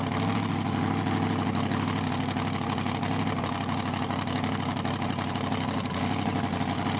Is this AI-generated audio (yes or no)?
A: no